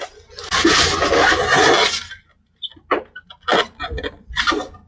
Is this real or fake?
real